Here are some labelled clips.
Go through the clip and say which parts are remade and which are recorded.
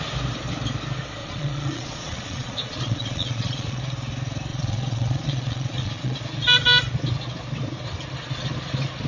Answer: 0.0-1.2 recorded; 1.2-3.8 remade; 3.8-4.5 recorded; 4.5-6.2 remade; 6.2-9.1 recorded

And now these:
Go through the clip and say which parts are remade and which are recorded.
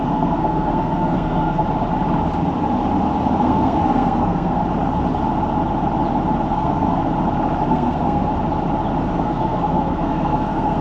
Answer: 0.0-1.6 remade; 1.6-3.4 recorded; 3.4-4.6 remade; 4.6-6.5 recorded; 6.5-7.0 remade; 7.0-7.7 recorded; 7.7-8.3 remade; 8.3-9.0 recorded; 9.0-10.8 remade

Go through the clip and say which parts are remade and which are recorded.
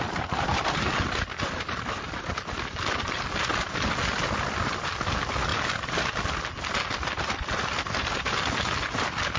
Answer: 0.0-9.4 recorded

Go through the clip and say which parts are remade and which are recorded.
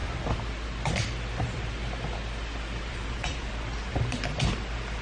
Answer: 0.0-2.9 recorded; 2.9-3.5 remade; 3.5-3.9 recorded; 3.9-4.5 remade; 4.5-5.0 recorded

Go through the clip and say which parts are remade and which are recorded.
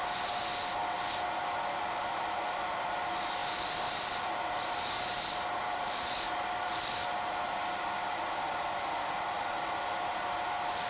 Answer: 0.0-10.9 recorded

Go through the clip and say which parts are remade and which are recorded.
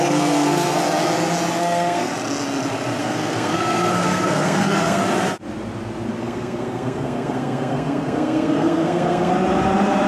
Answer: 0.0-0.8 remade; 0.8-1.6 recorded; 1.6-2.1 remade; 2.1-3.0 recorded; 3.0-5.0 remade; 5.0-6.2 recorded; 6.2-9.3 remade; 9.3-10.1 recorded